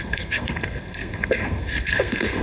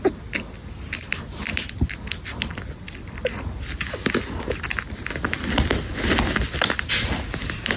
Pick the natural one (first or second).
second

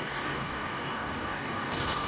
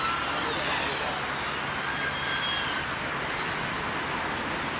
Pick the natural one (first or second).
second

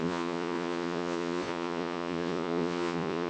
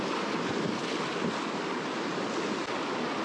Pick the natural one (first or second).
second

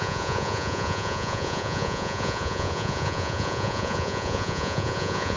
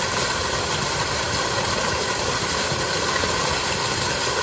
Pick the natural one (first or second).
second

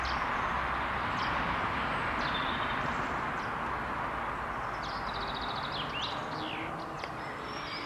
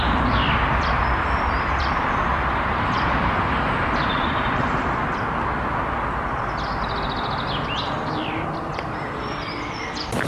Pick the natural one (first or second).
first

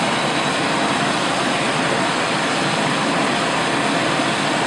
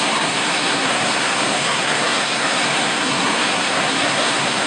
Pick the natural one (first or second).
first